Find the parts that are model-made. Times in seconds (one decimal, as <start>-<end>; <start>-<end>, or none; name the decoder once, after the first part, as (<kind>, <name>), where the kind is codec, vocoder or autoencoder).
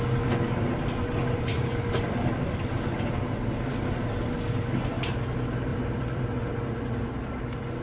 1.5-2.8 (vocoder, BigVGAN v2); 5.7-6.2